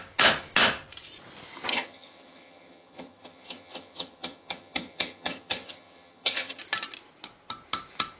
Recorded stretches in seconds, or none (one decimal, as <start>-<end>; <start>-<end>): 0.0-1.7; 6.6-8.2